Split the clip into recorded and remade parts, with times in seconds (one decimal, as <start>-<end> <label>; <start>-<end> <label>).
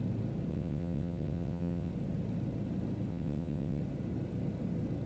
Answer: 0.0-0.5 recorded; 0.5-1.9 remade; 1.9-3.1 recorded; 3.1-3.8 remade; 3.8-5.1 recorded